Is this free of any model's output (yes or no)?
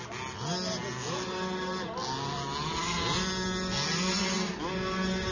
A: yes